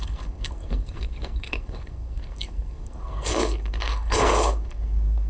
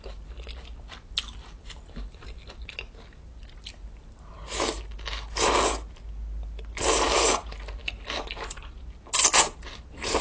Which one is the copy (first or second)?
first